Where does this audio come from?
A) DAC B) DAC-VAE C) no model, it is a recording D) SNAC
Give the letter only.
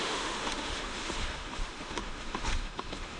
B